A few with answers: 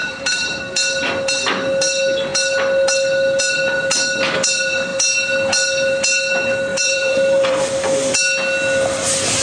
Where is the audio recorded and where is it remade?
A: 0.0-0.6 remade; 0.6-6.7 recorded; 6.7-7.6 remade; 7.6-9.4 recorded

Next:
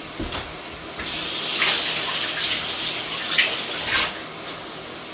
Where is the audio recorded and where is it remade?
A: 0.0-5.1 recorded

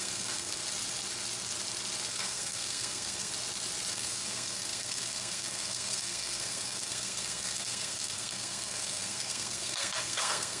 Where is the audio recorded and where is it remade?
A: 0.0-0.6 remade; 0.6-2.1 recorded; 2.1-3.3 remade; 3.3-3.9 recorded; 3.9-10.6 remade